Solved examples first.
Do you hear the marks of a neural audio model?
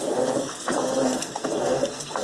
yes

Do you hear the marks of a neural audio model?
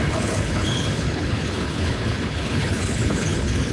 yes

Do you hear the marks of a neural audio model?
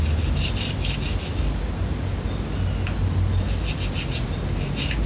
no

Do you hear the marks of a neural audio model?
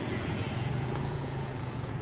yes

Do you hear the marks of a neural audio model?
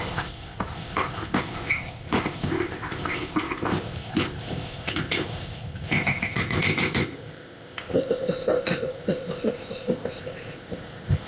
yes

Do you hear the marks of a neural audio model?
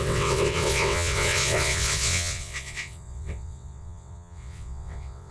yes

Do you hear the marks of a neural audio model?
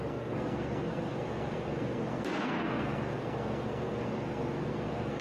yes